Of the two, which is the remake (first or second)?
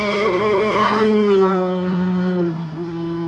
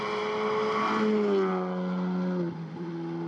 first